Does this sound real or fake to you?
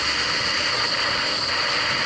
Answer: real